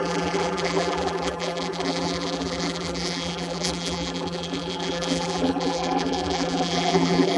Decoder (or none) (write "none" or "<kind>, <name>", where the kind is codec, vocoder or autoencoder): vocoder, BigVGAN v2